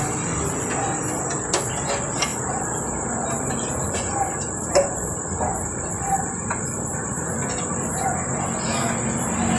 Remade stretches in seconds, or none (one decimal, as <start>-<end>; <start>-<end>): 2.3-7.3